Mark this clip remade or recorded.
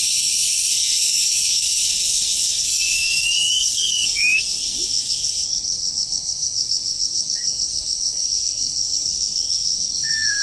remade